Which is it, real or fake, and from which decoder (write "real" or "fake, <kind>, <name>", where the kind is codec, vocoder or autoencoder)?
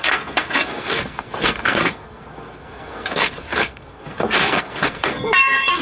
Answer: fake, codec, SNAC